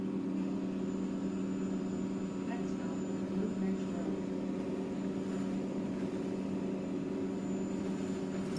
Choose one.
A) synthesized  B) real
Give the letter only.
B